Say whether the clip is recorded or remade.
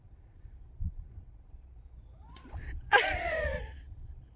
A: remade